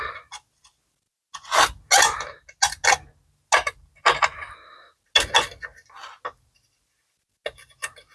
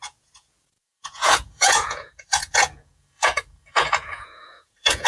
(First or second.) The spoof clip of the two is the second